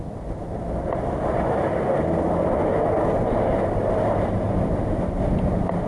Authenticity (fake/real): real